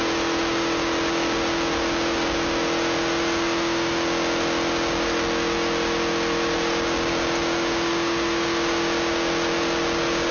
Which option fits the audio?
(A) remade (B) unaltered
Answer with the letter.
B